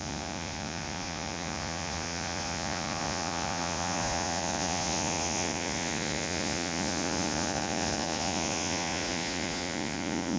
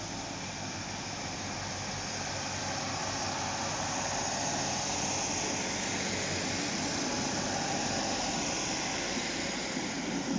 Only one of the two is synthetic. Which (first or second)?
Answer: first